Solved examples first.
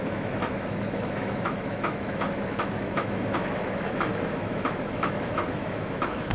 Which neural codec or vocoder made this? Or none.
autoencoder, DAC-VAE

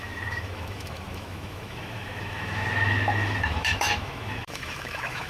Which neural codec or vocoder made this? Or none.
autoencoder, DAC-VAE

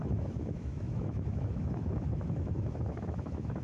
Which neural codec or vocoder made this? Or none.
autoencoder, DAC-VAE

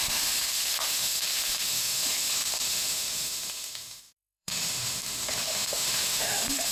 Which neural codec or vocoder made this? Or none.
autoencoder, DAC-VAE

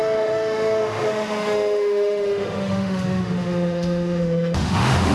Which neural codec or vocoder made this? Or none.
autoencoder, DAC-VAE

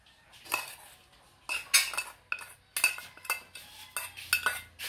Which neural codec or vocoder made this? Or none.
none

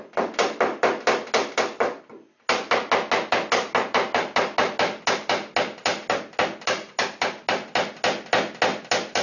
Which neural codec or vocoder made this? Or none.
none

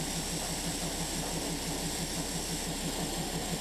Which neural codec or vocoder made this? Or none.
none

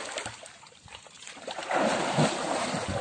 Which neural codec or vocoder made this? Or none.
none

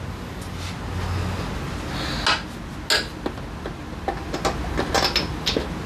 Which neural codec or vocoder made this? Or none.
none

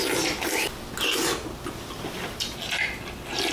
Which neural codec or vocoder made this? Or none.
none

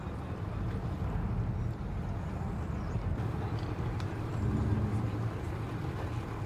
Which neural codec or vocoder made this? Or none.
none